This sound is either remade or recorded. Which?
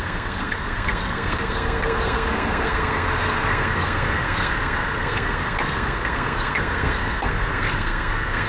remade